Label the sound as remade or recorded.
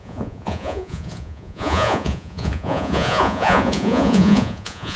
remade